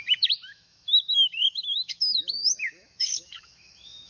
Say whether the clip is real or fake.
fake